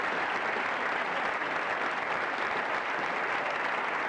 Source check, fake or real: real